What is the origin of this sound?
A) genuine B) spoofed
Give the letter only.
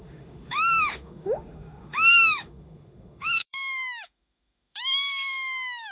B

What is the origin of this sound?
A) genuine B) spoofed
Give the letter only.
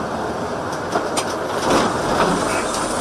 A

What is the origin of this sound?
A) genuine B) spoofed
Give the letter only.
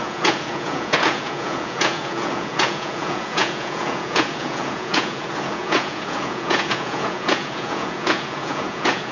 B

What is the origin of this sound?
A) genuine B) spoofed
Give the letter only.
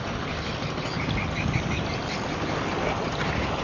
A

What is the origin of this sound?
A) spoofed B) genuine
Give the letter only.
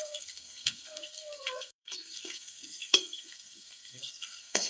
A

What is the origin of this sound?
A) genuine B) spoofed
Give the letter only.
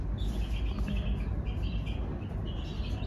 A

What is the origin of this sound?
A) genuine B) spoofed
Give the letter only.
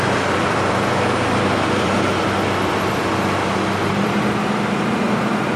B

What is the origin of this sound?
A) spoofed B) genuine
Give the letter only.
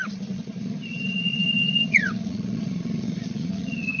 A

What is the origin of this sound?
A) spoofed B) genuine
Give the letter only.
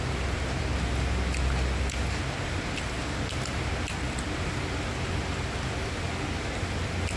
B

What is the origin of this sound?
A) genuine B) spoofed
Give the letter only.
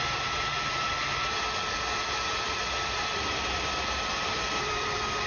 B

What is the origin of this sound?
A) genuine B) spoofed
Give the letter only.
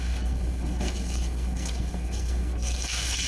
B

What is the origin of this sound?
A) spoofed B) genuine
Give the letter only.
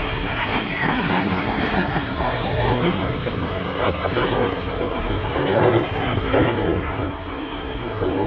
A